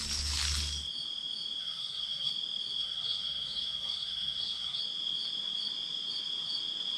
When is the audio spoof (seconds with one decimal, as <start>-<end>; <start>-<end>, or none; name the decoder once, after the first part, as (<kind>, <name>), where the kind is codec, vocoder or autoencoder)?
1.6-2.3 (codec, SNAC); 2.8-4.8

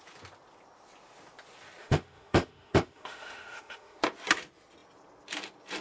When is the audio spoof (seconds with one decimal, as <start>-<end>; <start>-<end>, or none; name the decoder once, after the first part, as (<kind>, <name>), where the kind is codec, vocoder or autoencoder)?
1.8-4.0 (autoencoder, DAC-VAE)

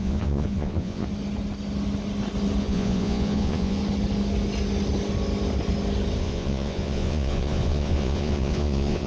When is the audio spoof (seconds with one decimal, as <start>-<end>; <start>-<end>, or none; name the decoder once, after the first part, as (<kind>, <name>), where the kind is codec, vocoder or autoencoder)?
0.0-1.1 (vocoder, Vocos); 2.6-3.8; 6.2-9.1

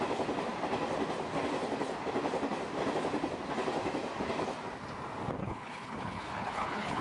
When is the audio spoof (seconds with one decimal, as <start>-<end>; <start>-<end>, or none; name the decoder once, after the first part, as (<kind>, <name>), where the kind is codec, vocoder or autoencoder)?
5.4-7.0 (codec, HILCodec)

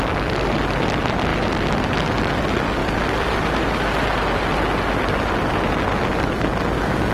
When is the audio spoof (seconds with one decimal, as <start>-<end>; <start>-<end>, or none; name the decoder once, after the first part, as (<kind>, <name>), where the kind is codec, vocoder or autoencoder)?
none